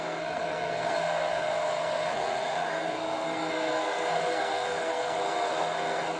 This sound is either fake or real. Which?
fake